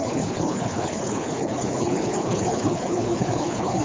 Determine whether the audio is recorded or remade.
remade